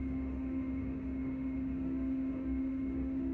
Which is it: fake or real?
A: fake